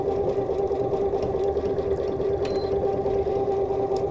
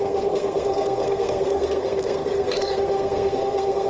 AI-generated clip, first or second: second